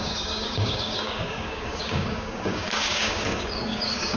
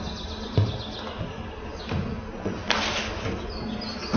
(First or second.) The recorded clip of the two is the second